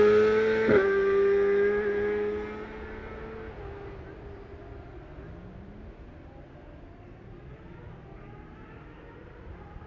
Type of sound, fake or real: real